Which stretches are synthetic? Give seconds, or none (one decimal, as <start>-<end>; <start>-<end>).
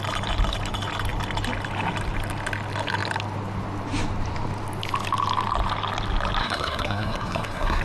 6.4-7.8